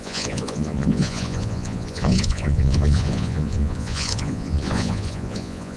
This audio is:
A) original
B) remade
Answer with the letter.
B